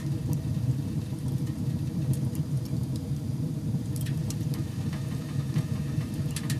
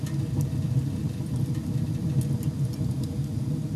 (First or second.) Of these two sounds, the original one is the second